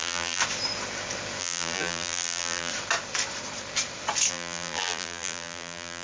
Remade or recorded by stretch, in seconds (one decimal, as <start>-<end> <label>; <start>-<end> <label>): 0.0-0.4 remade; 0.4-1.4 recorded; 1.4-2.7 remade; 2.7-4.3 recorded; 4.3-6.0 remade